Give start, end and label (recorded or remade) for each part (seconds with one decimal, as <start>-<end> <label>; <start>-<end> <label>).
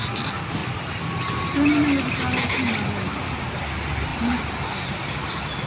0.0-0.6 remade; 0.6-3.0 recorded; 3.0-5.7 remade